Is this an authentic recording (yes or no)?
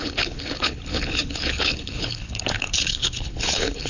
no